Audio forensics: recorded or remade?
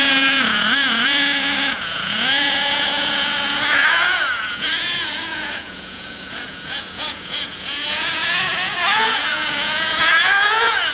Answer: remade